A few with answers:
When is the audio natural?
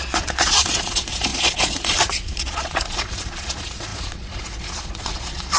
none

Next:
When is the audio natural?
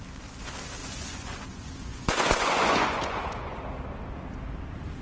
0.0-0.8; 3.6-5.0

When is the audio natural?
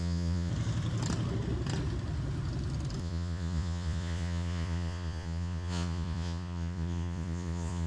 0.5-3.0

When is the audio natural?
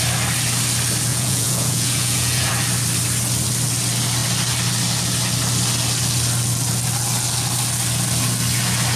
0.0-1.1; 2.5-9.0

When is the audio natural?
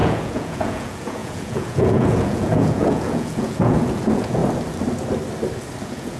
4.4-5.8